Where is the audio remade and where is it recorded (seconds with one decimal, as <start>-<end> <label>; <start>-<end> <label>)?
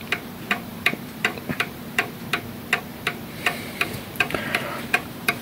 0.0-2.3 remade; 2.3-2.8 recorded; 2.8-5.4 remade